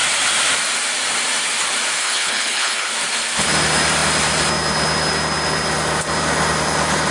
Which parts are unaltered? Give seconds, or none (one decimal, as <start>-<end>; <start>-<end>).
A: 0.0-2.0; 2.9-7.1